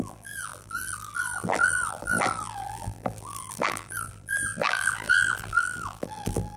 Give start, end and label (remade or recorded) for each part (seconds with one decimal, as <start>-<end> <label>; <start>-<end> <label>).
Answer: 0.0-6.6 remade